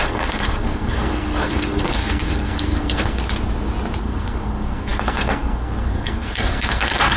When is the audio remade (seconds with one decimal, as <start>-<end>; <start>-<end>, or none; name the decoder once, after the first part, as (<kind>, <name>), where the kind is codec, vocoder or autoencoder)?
0.0-3.2 (codec, SNAC); 4.0-7.2